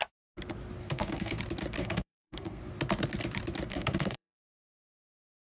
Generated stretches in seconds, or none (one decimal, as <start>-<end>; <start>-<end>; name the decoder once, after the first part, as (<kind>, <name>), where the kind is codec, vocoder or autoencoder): 0.8-1.4 (codec, SNAC); 1.8-2.7; 3.7-4.5